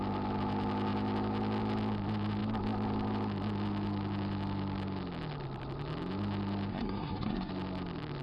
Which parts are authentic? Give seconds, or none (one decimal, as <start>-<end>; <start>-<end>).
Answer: 0.0-6.7; 7.5-8.2